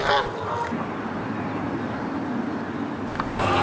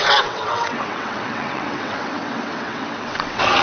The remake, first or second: second